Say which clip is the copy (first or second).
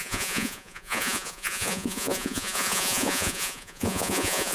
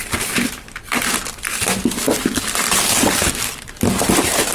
first